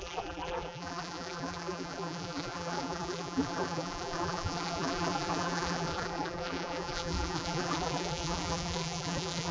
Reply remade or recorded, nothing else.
remade